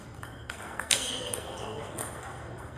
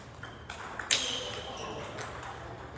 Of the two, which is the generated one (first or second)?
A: first